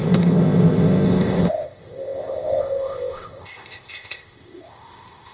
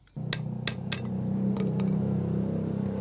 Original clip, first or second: second